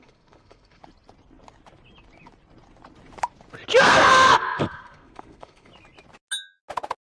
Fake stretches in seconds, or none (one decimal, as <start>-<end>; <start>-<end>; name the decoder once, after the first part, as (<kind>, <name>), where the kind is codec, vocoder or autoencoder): 0.0-0.8 (codec, SNAC); 3.8-5.7